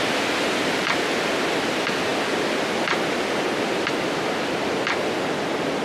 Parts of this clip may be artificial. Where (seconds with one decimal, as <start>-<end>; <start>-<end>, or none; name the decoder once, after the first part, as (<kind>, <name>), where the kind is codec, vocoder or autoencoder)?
0.0-5.8 (vocoder, BigVGAN v2)